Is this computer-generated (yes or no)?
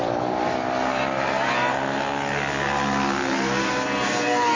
no